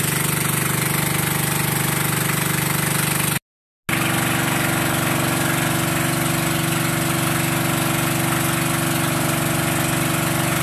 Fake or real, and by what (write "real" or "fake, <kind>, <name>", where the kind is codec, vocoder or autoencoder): real